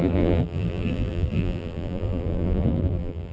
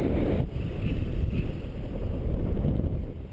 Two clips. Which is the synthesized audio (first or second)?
first